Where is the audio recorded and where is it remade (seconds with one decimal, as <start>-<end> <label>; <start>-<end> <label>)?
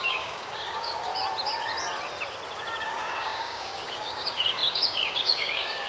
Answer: 0.0-1.1 remade; 1.1-2.8 recorded; 2.8-5.9 remade